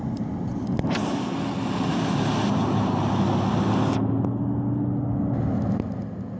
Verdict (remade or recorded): recorded